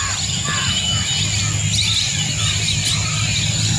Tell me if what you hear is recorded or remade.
recorded